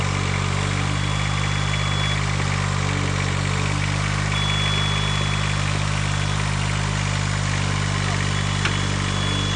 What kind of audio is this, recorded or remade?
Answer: recorded